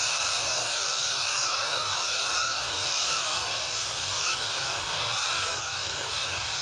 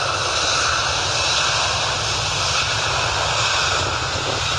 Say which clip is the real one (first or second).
second